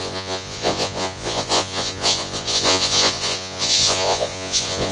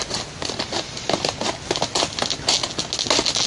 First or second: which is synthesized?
first